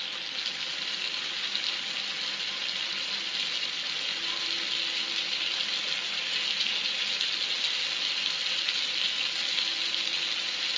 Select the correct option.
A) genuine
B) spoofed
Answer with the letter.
A